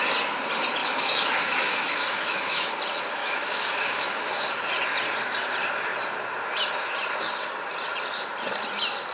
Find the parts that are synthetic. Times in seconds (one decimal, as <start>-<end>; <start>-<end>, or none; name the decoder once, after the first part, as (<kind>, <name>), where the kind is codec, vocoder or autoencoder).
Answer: 0.8-2.7 (autoencoder, DAC-VAE); 3.2-4.5